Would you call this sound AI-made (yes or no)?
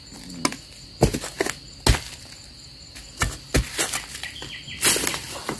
no